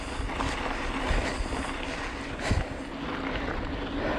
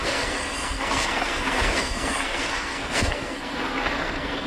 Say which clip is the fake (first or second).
second